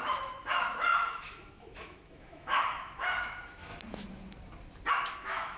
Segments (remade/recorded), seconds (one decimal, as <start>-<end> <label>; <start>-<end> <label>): 0.0-3.7 remade; 3.7-4.9 recorded; 4.9-5.6 remade